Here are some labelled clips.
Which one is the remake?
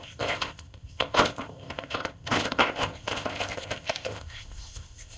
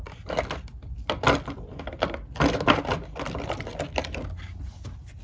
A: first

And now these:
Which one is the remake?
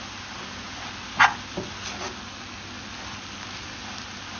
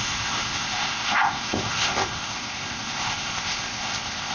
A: second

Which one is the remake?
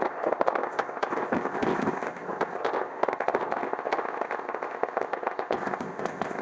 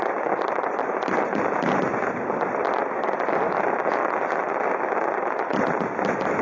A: first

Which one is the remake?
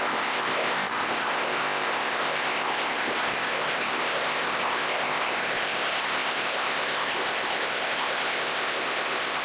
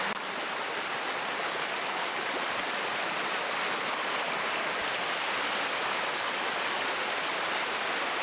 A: first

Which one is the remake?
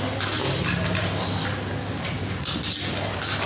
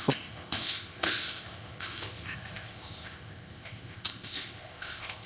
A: second